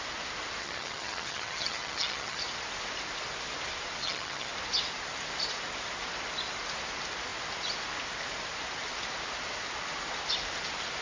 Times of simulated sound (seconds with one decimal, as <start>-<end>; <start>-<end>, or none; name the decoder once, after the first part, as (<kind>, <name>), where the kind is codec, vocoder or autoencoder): 0.6-2.4 (vocoder, HiFi-GAN); 4.0-4.5